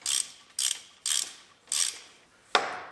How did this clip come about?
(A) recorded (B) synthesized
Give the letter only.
A